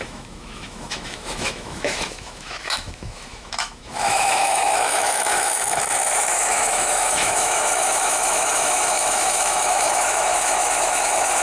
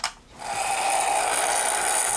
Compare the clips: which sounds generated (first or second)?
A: first